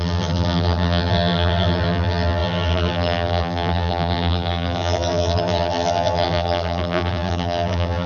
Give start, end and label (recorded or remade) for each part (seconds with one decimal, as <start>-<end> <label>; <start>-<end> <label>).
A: 0.0-8.1 remade